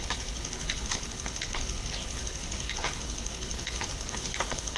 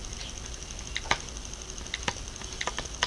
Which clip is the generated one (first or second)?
first